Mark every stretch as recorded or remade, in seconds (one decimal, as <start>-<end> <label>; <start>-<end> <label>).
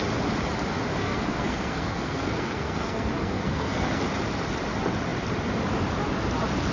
0.0-1.0 recorded; 1.0-4.0 remade; 4.0-6.7 recorded